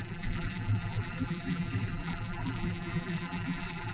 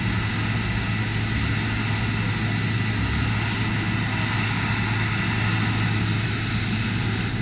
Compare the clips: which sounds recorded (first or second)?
second